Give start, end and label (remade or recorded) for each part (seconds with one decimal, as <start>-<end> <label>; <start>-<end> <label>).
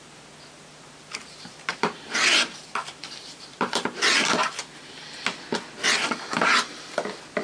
0.0-1.7 recorded; 1.7-4.6 remade; 4.6-7.4 recorded